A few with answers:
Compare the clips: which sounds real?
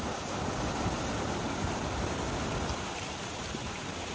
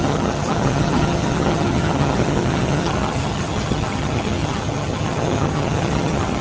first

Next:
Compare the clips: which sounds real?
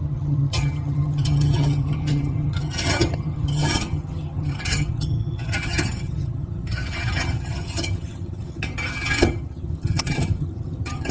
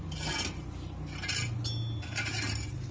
second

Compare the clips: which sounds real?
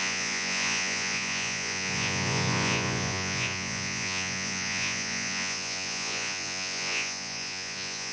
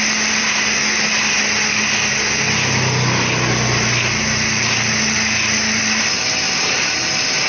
second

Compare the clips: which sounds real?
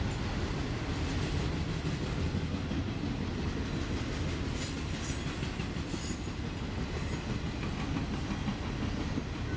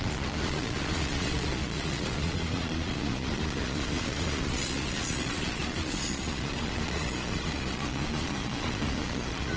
first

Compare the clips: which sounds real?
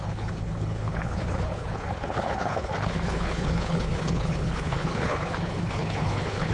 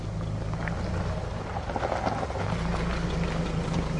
second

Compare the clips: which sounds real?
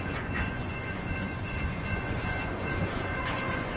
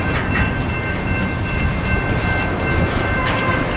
second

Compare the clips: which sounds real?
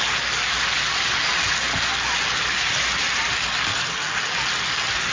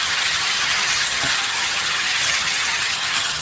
first